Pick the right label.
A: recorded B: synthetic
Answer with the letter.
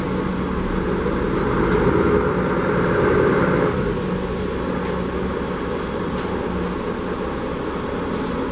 A